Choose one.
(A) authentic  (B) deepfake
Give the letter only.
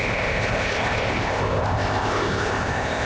B